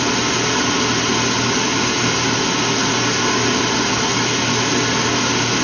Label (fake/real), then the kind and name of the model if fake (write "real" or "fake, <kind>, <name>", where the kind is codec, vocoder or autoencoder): real